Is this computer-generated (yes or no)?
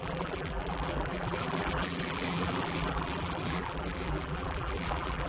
yes